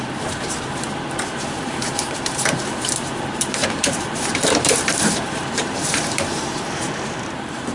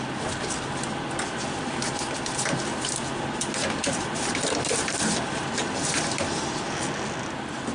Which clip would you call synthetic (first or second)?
first